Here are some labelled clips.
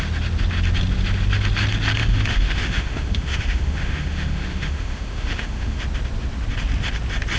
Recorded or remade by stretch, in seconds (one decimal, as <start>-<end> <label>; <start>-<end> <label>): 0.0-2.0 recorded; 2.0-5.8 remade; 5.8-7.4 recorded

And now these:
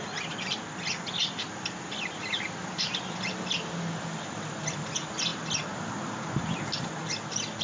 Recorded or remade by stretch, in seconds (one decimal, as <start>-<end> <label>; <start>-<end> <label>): 0.0-1.2 recorded; 1.2-4.5 remade; 4.5-7.6 recorded

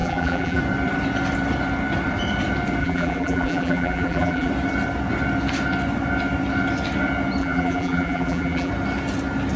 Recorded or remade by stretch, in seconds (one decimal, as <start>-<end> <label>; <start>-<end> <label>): 0.0-0.6 remade; 0.6-2.8 recorded; 2.8-4.5 remade; 4.5-7.4 recorded; 7.4-8.7 remade; 8.7-9.6 recorded

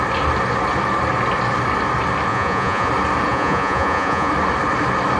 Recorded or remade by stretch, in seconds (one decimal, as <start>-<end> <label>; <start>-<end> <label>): 0.0-2.3 recorded; 2.3-2.9 remade; 2.9-3.3 recorded; 3.3-4.3 remade; 4.3-5.2 recorded